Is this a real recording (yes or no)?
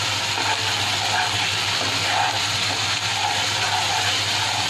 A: yes